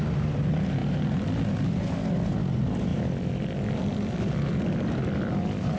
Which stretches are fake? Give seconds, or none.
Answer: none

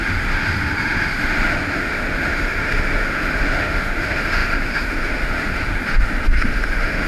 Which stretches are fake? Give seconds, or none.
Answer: 0.0-7.1 (autoencoder, DAC-VAE)

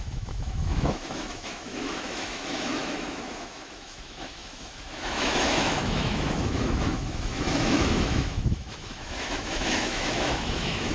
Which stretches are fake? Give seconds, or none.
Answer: 0.0-10.9 (autoencoder, DAC-VAE)

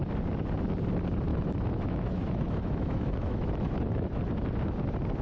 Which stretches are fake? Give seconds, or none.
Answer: 1.3-4.2 (autoencoder, DAC-VAE)

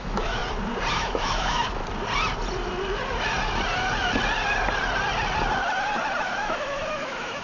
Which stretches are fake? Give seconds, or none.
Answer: 0.0-0.4 (autoencoder, DAC-VAE); 0.9-1.8; 6.2-7.4